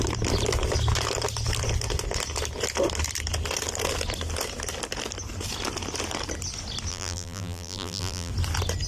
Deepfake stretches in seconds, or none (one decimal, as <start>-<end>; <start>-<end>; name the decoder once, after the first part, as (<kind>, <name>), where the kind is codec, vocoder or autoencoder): 6.9-8.3 (vocoder, BigVGAN v2)